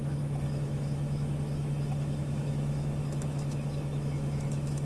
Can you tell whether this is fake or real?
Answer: fake